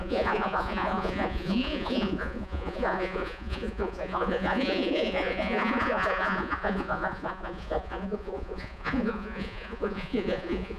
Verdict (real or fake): fake